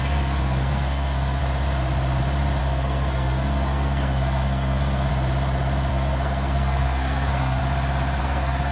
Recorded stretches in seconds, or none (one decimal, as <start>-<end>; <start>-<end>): 1.4-2.6; 5.1-5.9; 7.6-8.2